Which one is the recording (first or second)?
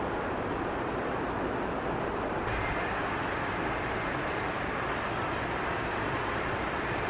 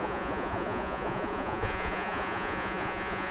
first